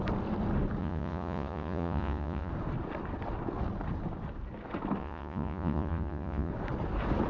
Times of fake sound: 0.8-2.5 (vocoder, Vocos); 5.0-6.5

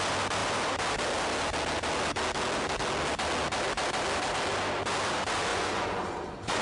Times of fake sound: 5.5-6.6 (vocoder, Vocos)

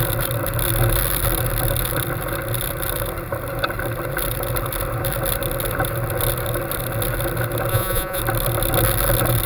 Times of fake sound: 7.7-8.2 (vocoder, Vocos)

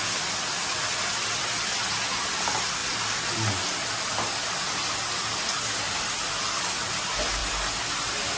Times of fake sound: none

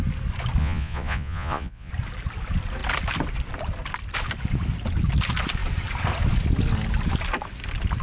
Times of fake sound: 0.6-1.9 (vocoder, Vocos)